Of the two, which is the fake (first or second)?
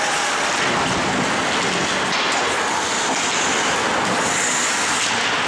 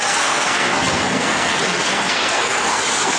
second